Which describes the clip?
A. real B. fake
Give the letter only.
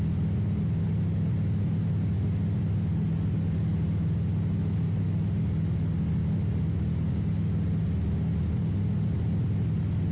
A